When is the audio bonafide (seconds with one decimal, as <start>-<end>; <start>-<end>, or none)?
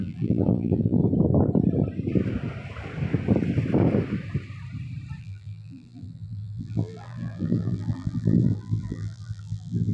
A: 1.0-5.2